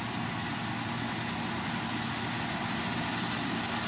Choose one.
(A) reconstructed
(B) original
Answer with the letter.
B